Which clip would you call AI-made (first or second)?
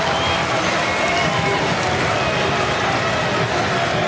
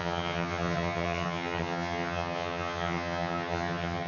second